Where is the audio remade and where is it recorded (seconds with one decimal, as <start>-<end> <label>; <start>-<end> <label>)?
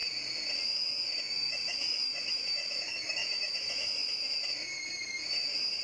0.0-1.2 recorded; 1.2-3.9 remade; 3.9-5.8 recorded